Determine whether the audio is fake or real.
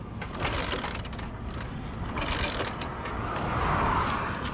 real